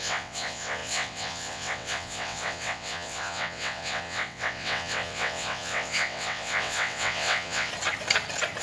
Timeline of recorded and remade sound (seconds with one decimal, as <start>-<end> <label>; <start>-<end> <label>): 0.0-7.7 remade; 7.7-8.6 recorded